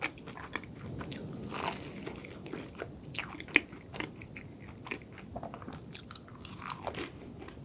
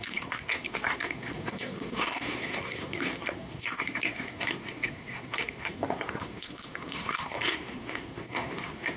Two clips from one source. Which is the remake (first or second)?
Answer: second